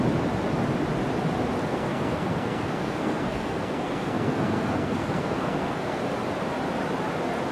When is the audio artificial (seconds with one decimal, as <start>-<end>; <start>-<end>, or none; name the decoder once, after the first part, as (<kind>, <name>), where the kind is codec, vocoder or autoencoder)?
1.7-6.0 (codec, SNAC)